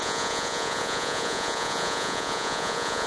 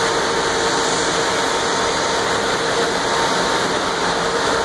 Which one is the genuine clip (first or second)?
second